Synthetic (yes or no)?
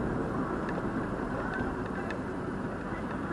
yes